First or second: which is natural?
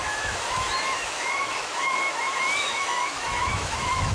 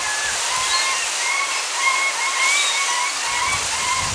second